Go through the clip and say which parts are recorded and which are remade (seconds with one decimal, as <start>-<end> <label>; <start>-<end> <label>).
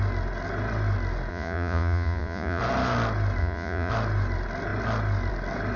0.0-1.3 recorded; 1.3-2.6 remade; 2.6-3.4 recorded; 3.4-3.9 remade; 3.9-5.8 recorded